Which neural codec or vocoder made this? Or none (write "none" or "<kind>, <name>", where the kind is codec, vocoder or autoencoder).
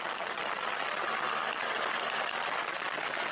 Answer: none